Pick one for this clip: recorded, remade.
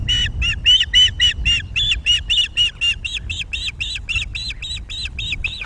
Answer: recorded